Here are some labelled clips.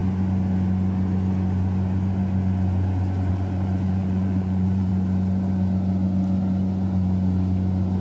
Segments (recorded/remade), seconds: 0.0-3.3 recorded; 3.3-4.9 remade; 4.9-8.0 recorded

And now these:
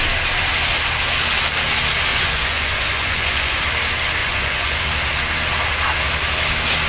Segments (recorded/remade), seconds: 0.0-2.1 recorded; 2.1-3.6 remade; 3.6-4.2 recorded; 4.2-4.8 remade; 4.8-6.9 recorded

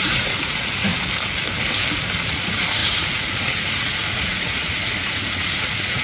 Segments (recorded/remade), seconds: 0.0-0.9 remade; 0.9-2.2 recorded; 2.2-6.0 remade

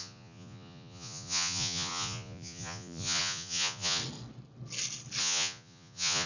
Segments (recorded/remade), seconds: 0.0-4.0 remade; 4.0-5.2 recorded; 5.2-6.3 remade